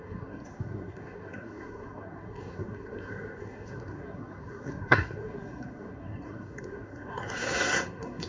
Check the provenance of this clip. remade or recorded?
remade